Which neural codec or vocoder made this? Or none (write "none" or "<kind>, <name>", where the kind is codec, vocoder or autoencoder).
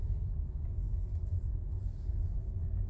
none